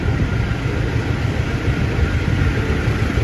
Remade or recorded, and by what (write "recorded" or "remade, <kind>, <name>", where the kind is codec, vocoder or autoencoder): recorded